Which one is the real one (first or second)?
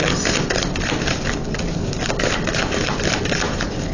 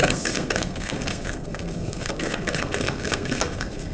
first